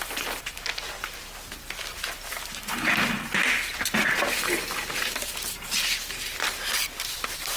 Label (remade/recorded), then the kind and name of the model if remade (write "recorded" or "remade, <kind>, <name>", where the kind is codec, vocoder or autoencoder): remade, vocoder, BigVGAN v2